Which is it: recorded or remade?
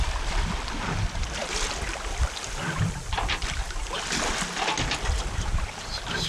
recorded